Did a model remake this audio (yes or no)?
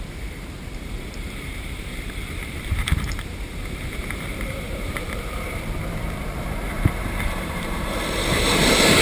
yes